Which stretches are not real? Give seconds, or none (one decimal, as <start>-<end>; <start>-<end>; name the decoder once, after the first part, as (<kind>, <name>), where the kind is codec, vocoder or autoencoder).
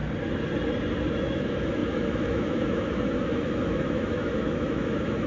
1.1-5.3 (autoencoder, DAC-VAE)